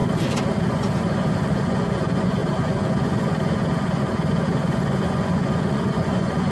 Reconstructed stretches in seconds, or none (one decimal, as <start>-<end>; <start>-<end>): 0.7-6.5